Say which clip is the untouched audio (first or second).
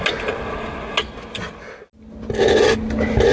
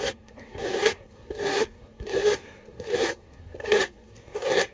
first